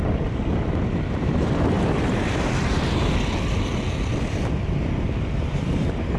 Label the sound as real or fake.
real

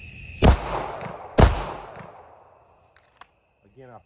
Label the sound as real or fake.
real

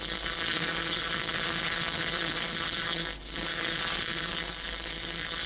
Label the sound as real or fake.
fake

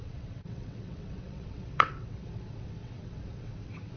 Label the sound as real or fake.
fake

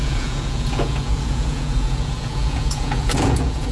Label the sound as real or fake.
fake